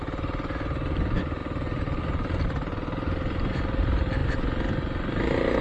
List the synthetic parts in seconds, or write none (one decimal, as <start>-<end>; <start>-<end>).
none